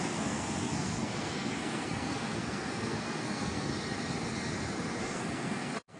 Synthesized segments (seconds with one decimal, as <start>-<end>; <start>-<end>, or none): 0.0-3.7; 5.0-6.0